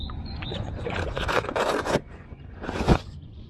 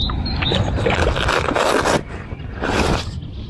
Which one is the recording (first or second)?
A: second